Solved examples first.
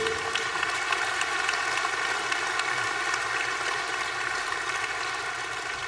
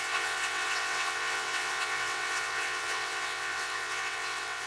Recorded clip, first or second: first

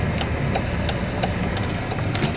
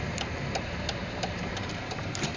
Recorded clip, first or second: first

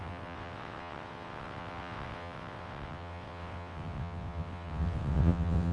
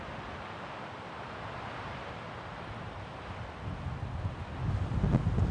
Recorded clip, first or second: second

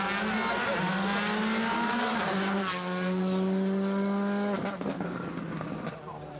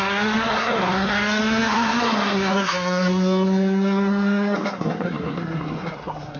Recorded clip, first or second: first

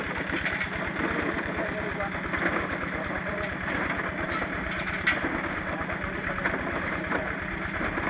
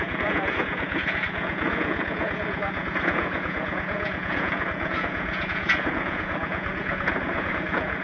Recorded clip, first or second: first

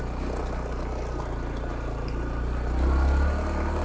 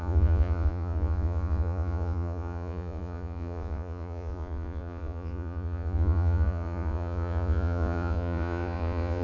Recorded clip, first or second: first